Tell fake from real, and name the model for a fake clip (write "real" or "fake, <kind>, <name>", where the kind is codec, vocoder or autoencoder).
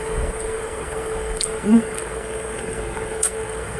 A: fake, codec, SNAC